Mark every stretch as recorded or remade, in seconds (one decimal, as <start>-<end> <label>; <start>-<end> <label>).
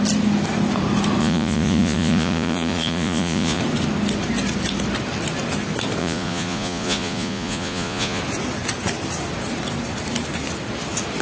0.0-1.2 recorded; 1.2-3.6 remade; 3.6-6.0 recorded; 6.0-8.2 remade; 8.2-11.2 recorded